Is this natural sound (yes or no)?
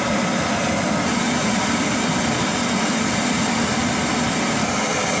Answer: no